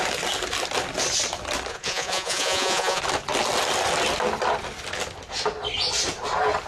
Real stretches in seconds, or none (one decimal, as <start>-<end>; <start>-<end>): 0.0-1.7; 3.0-6.7